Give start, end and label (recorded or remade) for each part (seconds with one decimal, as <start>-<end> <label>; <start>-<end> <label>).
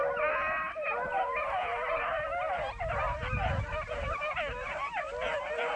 0.0-5.8 recorded